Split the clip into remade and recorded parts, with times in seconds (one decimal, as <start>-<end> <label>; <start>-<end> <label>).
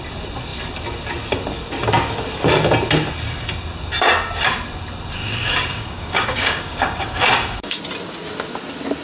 0.0-5.2 recorded; 5.2-7.8 remade; 7.8-9.0 recorded